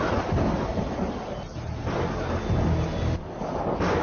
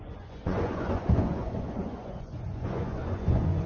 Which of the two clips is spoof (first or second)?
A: second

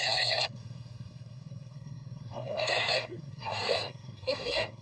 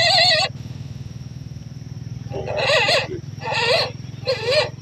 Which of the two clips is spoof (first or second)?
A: first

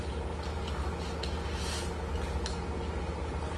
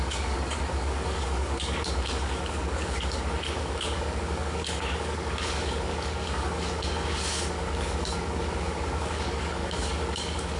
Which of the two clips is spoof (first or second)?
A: second